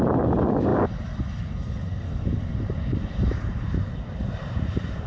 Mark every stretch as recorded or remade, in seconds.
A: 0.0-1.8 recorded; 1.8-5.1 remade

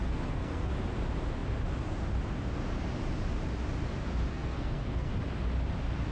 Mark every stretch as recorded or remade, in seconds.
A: 0.0-0.7 remade; 0.7-4.3 recorded; 4.3-5.1 remade; 5.1-6.1 recorded

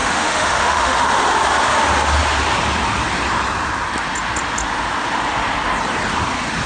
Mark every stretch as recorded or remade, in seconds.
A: 0.0-1.0 remade; 1.0-6.7 recorded

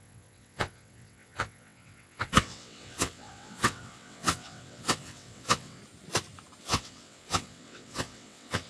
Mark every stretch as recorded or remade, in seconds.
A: 0.0-5.8 remade; 5.8-6.6 recorded; 6.6-8.7 remade